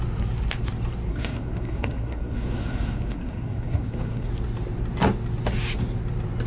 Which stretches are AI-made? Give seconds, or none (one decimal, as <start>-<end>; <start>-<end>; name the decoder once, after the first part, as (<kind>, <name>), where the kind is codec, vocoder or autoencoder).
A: 1.1-4.3 (codec, SNAC)